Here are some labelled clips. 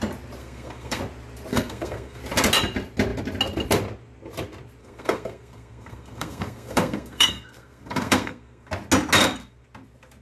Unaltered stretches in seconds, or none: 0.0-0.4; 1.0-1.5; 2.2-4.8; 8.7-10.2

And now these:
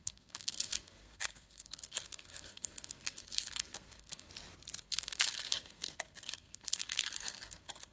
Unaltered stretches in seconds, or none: 4.3-4.8

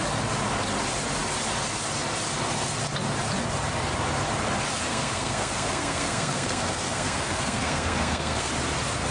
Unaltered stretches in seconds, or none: 0.0-4.9; 8.5-9.1

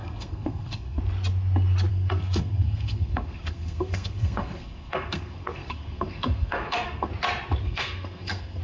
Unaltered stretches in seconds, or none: 1.0-1.9; 7.1-7.6